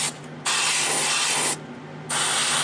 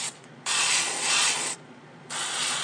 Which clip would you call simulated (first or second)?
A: second